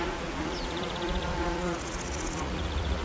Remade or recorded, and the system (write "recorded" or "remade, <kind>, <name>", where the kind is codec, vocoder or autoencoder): remade, vocoder, Vocos